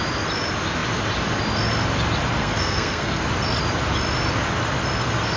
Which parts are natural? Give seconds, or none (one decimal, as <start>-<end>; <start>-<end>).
0.0-2.4; 3.2-5.4